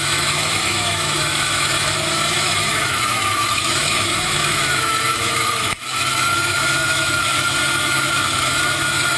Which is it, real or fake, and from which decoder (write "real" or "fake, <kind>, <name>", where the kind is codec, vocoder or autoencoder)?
fake, autoencoder, DAC-VAE